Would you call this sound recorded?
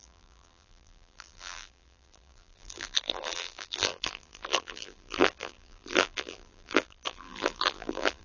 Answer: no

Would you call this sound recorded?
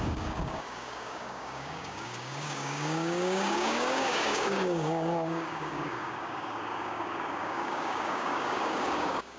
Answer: no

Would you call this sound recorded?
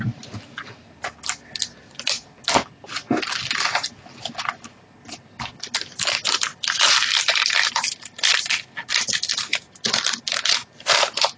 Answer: yes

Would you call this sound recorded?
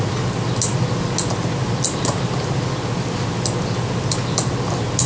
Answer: yes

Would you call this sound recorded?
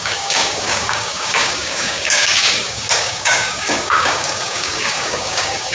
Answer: no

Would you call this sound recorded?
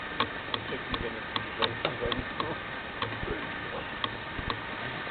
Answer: yes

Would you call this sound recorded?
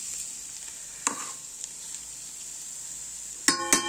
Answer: yes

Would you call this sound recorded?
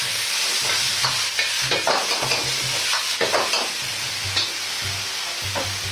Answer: yes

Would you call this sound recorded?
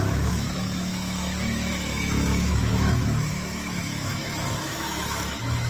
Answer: no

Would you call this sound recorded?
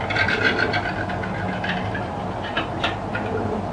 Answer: yes